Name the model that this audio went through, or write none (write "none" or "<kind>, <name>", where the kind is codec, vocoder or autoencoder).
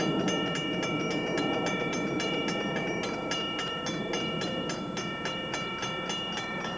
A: none